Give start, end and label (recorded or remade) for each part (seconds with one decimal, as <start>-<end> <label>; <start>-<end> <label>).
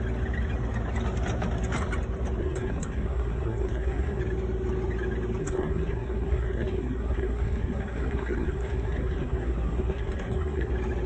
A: 0.0-2.4 recorded; 2.4-4.2 remade; 4.2-5.4 recorded; 5.4-10.7 remade; 10.7-11.1 recorded